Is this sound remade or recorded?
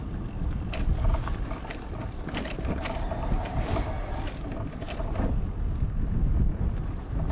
recorded